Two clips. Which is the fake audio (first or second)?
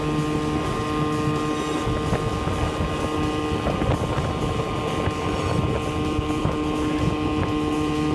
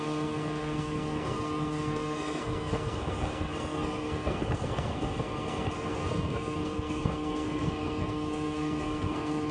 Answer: second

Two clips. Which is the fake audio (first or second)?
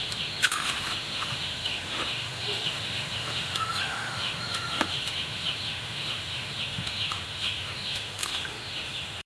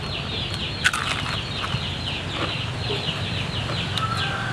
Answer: first